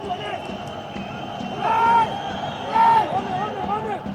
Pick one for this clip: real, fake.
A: real